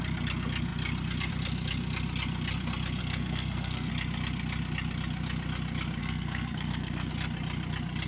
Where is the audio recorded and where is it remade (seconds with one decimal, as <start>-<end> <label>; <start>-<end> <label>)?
0.0-3.0 recorded; 3.0-3.9 remade; 3.9-6.0 recorded; 6.0-7.1 remade; 7.1-8.1 recorded